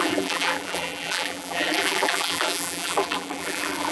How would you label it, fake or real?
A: fake